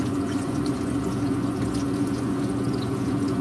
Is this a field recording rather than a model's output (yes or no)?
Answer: no